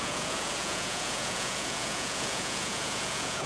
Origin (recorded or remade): remade